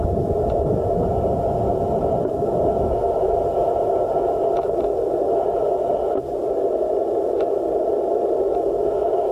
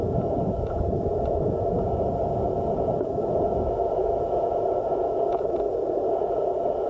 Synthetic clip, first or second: second